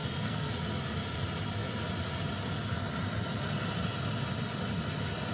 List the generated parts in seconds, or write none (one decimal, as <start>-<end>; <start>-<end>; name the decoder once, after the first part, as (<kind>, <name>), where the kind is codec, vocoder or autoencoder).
0.0-0.5 (codec, SNAC)